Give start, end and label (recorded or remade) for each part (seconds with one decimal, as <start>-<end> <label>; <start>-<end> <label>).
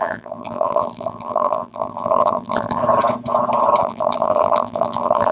0.0-2.8 remade; 2.8-3.8 recorded; 3.8-5.3 remade